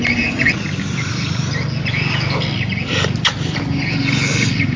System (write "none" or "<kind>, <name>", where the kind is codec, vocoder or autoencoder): none